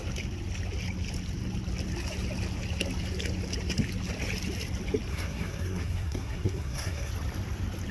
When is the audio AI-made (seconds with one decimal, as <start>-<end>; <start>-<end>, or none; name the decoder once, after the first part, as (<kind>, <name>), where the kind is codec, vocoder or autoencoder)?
5.1-7.1 (codec, SNAC)